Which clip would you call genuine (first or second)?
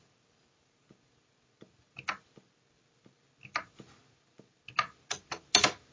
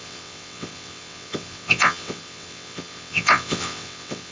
first